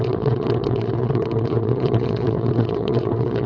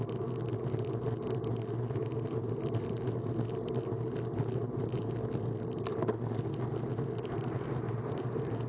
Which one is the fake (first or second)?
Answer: first